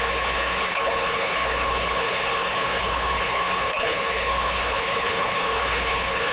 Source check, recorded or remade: remade